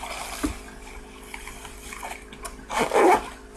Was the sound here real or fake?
real